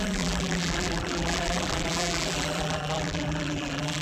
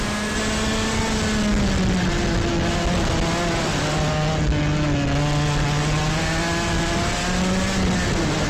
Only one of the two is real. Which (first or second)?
second